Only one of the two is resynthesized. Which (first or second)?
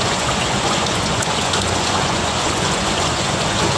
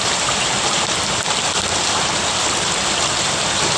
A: first